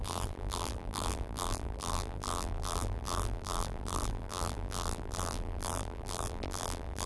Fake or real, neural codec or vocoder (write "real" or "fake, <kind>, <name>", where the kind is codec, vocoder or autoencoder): fake, vocoder, BigVGAN v2